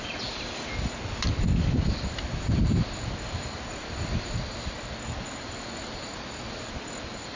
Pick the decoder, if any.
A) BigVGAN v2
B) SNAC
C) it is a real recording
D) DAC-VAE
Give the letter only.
C